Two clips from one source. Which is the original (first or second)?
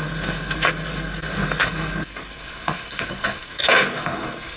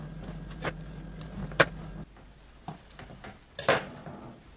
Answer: second